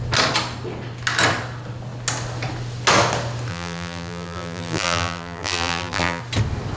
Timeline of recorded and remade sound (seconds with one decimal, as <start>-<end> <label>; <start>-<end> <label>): 0.0-3.5 recorded; 3.5-6.2 remade; 6.2-6.8 recorded